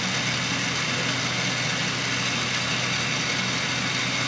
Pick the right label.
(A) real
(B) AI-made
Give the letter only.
A